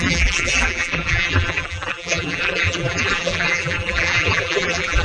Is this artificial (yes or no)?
yes